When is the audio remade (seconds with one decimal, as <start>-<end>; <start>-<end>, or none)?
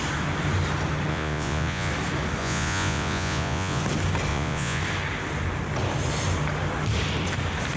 1.1-1.9; 2.4-3.8; 4.3-4.8